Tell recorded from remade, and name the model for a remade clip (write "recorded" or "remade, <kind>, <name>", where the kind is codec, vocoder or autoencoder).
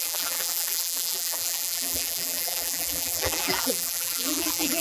remade, vocoder, BigVGAN v2